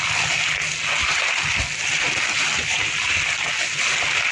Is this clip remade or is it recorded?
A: recorded